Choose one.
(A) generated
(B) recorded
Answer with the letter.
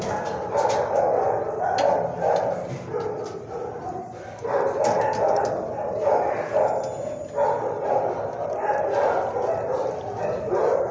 B